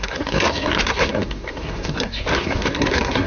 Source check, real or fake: fake